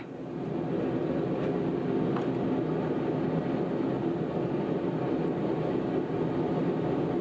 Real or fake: real